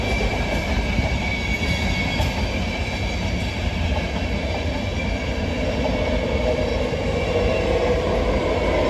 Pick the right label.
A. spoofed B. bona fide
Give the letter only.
B